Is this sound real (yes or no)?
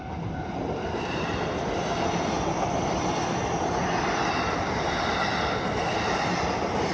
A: yes